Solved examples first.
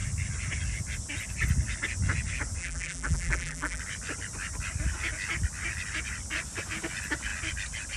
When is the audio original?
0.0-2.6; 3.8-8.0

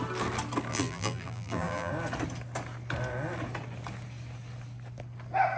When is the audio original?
0.0-0.7; 1.9-5.6

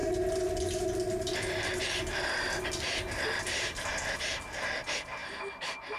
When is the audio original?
0.0-5.2

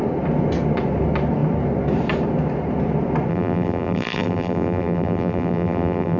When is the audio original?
0.0-3.3

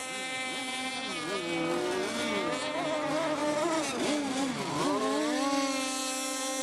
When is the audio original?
0.0-3.4; 5.0-6.6

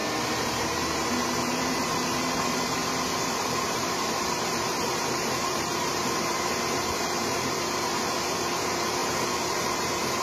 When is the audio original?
0.0-0.5; 2.8-3.4

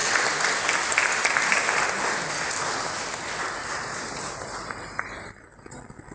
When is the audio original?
0.0-3.6; 4.1-6.1